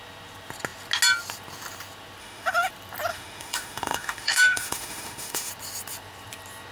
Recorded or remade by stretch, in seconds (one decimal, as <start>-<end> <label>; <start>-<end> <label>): 0.0-2.2 recorded; 2.2-2.7 remade; 2.7-3.1 recorded; 3.1-5.5 remade; 5.5-6.7 recorded